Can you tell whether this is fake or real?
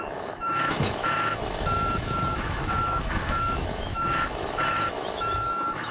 fake